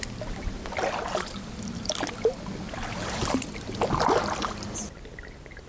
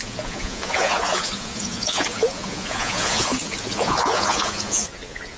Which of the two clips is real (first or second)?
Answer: first